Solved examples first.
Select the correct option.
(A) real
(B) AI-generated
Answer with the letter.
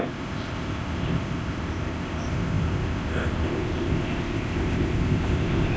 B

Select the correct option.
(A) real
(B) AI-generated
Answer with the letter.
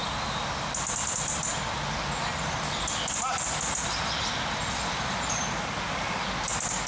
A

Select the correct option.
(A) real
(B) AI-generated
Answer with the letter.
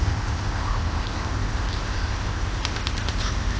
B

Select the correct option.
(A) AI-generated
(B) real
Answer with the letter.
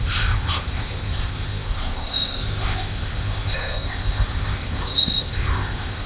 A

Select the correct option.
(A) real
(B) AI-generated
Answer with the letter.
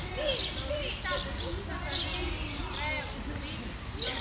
A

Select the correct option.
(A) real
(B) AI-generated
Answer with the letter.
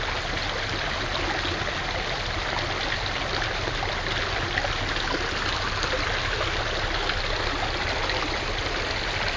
A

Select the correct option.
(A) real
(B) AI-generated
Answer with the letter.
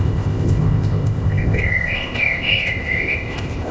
B